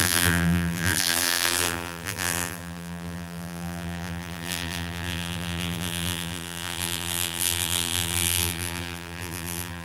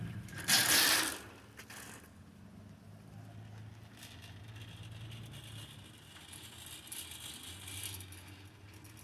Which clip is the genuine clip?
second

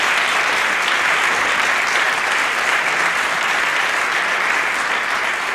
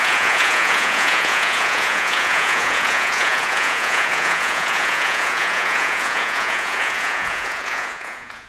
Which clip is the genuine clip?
first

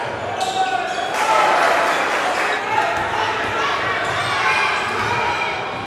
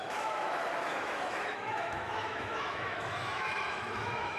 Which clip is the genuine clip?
first